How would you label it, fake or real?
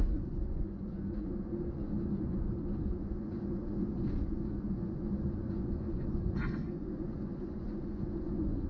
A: fake